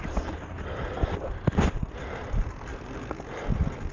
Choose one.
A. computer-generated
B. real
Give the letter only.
A